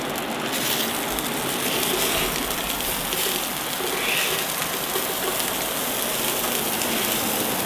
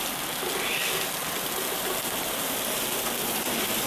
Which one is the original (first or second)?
first